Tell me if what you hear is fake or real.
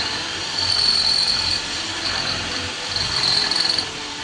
fake